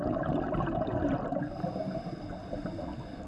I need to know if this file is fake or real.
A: real